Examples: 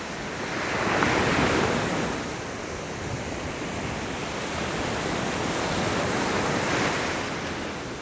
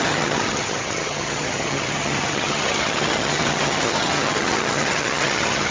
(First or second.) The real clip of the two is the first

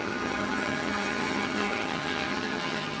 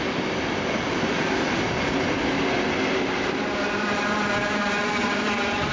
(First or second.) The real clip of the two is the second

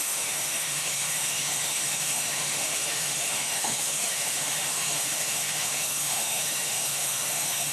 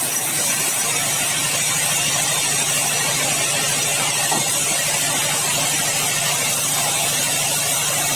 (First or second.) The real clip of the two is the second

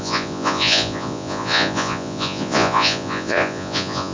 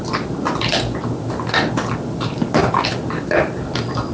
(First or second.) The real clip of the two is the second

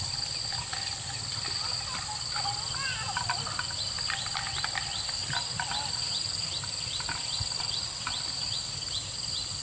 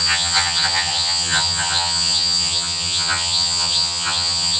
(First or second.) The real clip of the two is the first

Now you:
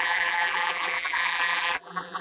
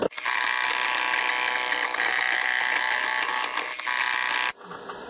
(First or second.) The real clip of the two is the second